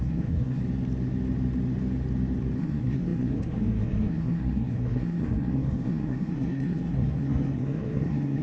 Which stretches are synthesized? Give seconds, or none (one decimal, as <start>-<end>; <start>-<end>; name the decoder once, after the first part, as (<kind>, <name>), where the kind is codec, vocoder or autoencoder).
0.0-0.6 (codec, SNAC); 2.6-8.4